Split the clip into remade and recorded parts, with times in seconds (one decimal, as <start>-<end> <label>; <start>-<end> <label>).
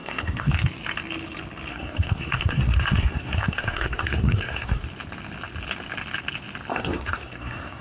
0.0-0.5 remade; 0.5-1.7 recorded; 1.7-4.8 remade; 4.8-6.7 recorded; 6.7-7.8 remade